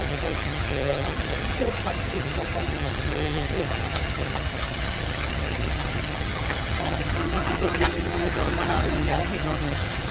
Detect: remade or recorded remade